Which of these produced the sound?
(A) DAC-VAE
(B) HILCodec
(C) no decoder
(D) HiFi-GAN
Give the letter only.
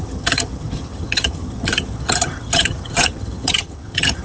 D